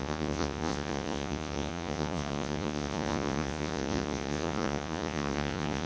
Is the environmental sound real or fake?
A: fake